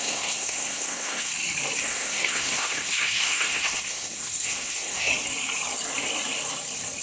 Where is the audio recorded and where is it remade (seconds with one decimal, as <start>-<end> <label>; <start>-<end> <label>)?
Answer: 0.0-1.3 remade; 1.3-1.8 recorded; 1.8-5.1 remade; 5.1-7.0 recorded